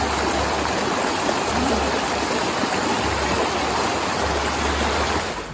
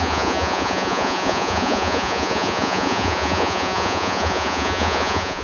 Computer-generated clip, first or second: second